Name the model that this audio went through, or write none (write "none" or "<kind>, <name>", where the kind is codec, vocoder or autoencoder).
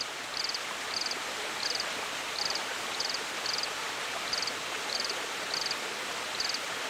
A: none